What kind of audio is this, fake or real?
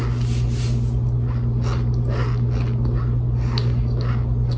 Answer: real